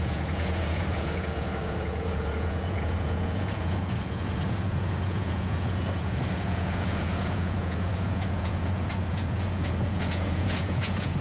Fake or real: fake